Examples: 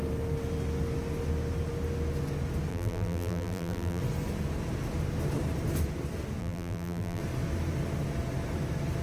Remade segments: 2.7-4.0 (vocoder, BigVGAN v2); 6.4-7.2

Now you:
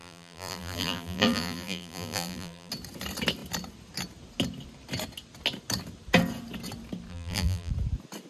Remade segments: 0.0-2.7 (vocoder, BigVGAN v2); 7.1-7.7

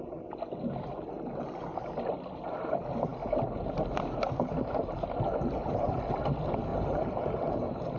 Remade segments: 5.6-6.2 (vocoder, BigVGAN v2); 6.7-8.0

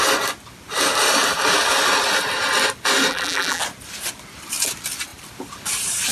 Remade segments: 3.1-3.6 (vocoder, BigVGAN v2)

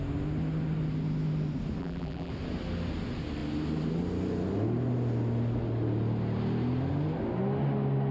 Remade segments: 1.8-2.3 (vocoder, BigVGAN v2)